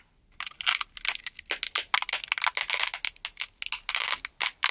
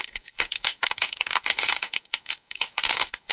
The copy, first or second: second